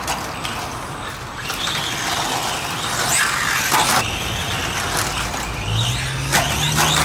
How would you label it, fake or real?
real